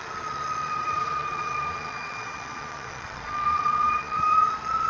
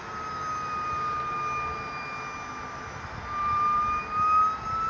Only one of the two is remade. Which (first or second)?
first